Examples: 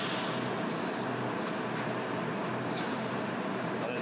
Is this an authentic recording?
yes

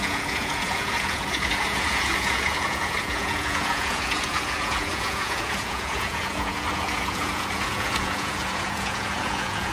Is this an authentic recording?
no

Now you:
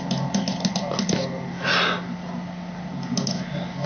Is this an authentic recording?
yes